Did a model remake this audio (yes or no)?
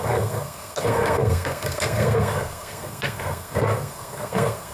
yes